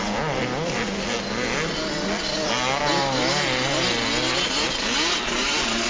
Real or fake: real